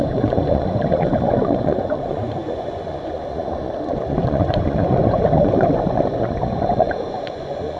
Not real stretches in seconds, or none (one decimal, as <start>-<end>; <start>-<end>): 0.0-7.8